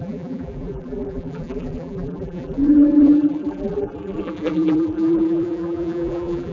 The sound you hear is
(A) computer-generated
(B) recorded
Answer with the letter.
A